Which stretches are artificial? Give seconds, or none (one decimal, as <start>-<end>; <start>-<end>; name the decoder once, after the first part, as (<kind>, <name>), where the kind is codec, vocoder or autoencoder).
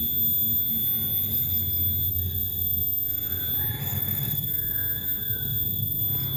2.1-3.4 (autoencoder, DAC-VAE); 3.8-6.0